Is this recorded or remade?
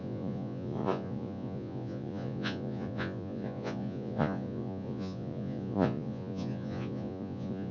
remade